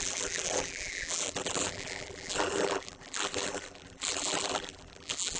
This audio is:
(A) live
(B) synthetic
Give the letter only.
B